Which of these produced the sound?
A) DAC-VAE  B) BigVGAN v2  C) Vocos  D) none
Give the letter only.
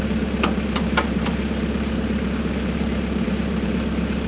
B